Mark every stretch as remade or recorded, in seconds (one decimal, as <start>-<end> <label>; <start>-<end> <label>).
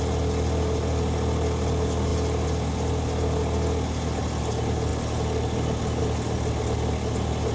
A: 0.0-7.5 recorded